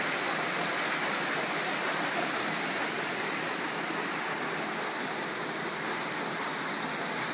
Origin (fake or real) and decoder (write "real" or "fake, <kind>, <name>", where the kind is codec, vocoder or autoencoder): real